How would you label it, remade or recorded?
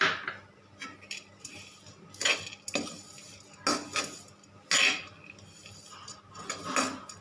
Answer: recorded